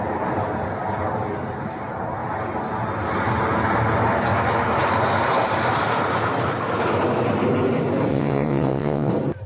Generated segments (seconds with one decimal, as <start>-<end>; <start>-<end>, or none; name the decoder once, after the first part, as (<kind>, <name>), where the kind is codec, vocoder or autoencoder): 8.1-9.1 (vocoder, WaveNeXt)